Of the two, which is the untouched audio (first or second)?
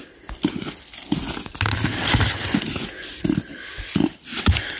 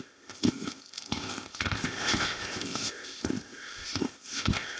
first